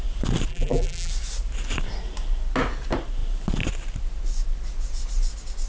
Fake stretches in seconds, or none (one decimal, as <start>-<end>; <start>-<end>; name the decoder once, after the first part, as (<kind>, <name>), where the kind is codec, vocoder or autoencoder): 0.5-1.1 (vocoder, BigVGAN v2)